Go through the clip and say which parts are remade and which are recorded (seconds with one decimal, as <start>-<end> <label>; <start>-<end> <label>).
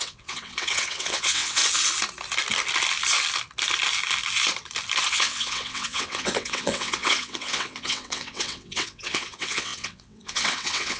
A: 0.0-1.6 remade; 1.6-5.1 recorded; 5.1-11.0 remade